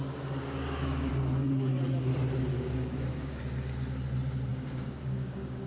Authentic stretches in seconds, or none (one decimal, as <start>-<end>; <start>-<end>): 0.0-0.4; 1.1-2.5; 3.4-4.5